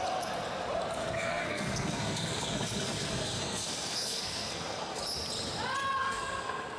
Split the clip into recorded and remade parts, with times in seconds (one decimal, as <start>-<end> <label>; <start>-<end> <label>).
0.0-1.0 recorded; 1.0-5.0 remade; 5.0-6.0 recorded; 6.0-6.8 remade

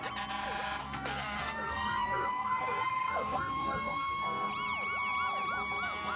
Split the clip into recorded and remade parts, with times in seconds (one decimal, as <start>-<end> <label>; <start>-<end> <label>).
0.0-0.8 recorded; 0.8-4.5 remade; 4.5-6.2 recorded

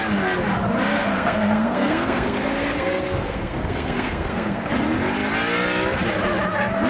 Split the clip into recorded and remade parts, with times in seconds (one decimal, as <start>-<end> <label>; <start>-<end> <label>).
0.0-1.0 recorded; 1.0-4.7 remade; 4.7-6.9 recorded

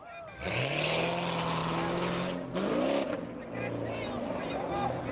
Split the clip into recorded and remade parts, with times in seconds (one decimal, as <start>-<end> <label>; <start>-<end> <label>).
0.0-5.1 recorded